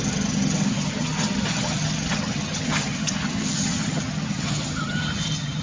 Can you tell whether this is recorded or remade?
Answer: remade